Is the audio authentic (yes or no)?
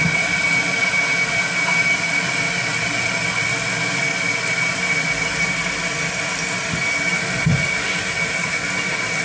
yes